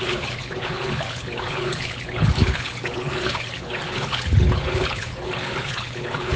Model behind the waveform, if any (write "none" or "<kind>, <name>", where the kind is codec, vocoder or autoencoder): codec, HILCodec